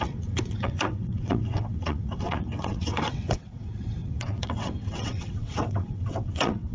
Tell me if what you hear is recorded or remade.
remade